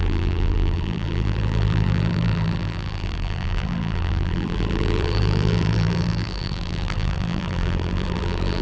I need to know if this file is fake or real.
fake